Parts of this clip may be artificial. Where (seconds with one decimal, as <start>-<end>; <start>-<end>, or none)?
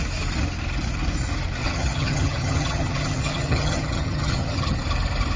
1.6-4.8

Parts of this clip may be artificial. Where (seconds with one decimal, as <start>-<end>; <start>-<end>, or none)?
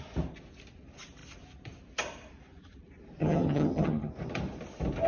3.2-4.1